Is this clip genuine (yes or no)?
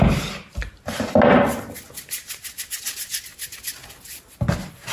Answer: yes